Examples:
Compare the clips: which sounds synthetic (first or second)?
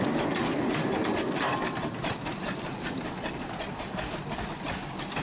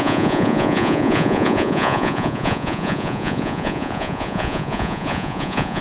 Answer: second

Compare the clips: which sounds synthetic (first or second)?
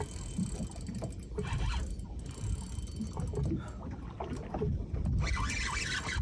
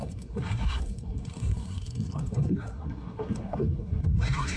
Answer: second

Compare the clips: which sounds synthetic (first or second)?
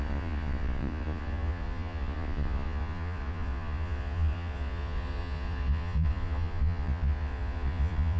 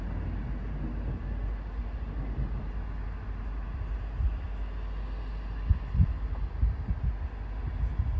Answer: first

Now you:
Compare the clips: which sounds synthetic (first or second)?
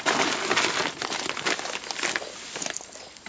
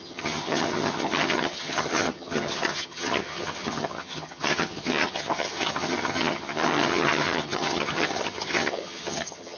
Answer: second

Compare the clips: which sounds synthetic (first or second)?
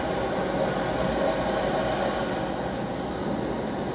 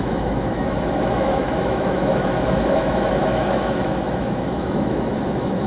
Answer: second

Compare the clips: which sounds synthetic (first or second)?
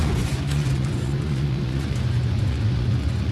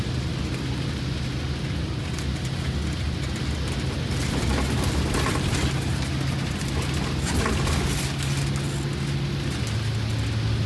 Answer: first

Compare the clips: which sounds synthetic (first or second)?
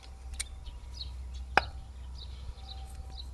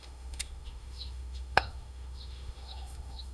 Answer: second